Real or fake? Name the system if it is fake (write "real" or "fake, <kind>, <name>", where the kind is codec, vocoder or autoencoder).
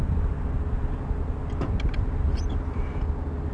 real